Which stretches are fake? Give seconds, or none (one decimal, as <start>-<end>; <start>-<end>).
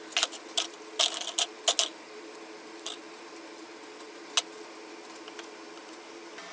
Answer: none